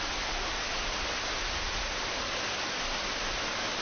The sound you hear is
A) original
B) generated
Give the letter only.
A